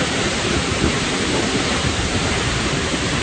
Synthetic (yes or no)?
yes